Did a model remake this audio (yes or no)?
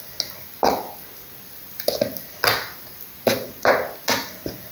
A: no